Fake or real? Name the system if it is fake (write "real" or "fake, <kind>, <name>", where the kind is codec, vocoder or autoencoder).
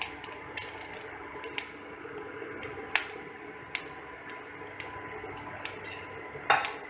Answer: real